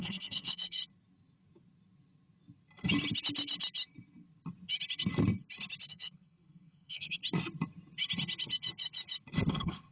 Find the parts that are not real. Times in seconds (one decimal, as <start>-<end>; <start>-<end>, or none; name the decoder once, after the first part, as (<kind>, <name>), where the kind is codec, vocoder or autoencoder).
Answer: 0.0-0.8 (codec, SNAC); 5.9-7.2; 9.5-9.9